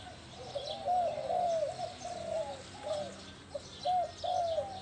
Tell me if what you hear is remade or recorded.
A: recorded